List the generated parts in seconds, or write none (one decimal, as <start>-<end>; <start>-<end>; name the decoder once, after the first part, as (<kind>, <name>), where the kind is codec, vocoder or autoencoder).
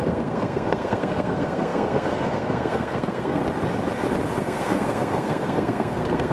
0.0-3.4 (codec, SNAC); 4.4-6.3